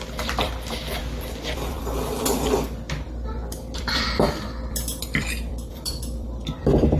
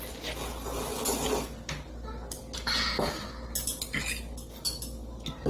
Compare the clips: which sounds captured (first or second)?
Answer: second